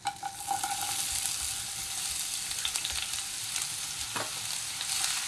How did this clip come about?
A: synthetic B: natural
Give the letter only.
B